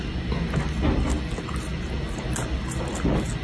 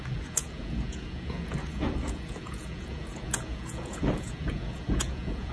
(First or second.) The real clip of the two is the first